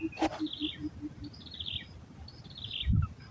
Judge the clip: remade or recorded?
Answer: recorded